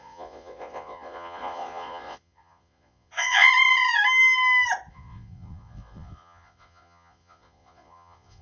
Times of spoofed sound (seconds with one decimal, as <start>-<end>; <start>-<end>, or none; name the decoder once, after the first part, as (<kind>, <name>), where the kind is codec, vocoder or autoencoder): 0.0-3.5 (vocoder, Vocos); 4.9-8.4